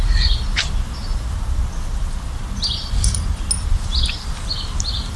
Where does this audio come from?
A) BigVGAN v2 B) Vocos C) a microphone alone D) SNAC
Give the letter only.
C